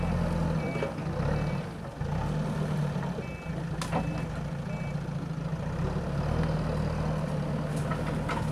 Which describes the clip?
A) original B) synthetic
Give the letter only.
A